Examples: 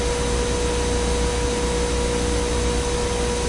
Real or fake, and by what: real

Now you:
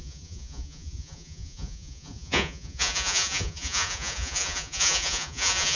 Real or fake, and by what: fake, vocoder, Vocos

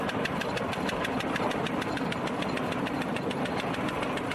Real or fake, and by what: real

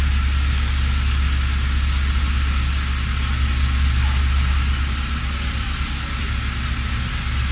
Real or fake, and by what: real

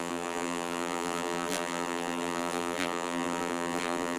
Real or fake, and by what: fake, vocoder, BigVGAN v2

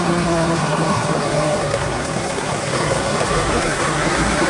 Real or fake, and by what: fake, codec, SNAC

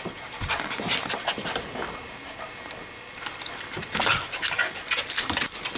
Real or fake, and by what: real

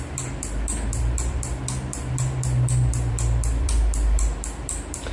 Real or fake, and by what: fake, vocoder, BigVGAN v2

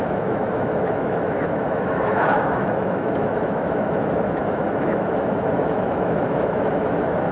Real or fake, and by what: fake, autoencoder, DAC-VAE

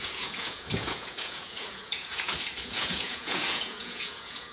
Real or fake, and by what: fake, vocoder, Vocos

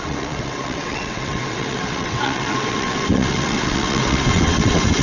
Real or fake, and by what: fake, vocoder, WaveNeXt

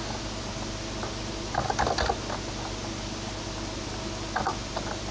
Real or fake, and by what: real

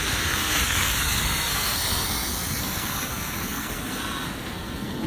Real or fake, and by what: fake, codec, SNAC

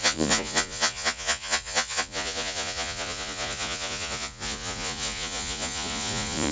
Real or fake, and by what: fake, vocoder, Vocos